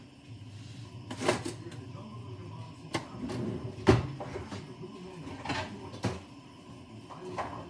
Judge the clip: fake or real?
real